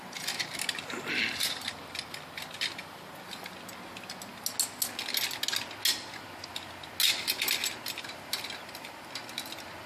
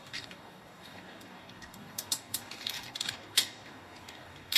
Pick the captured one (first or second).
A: first